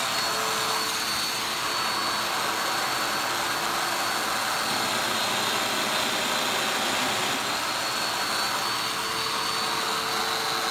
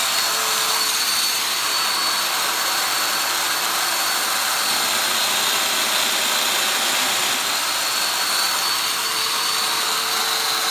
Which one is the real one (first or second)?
first